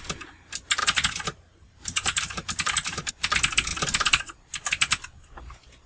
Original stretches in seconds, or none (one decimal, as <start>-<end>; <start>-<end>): 0.0-0.8; 3.1-3.7; 4.4-5.9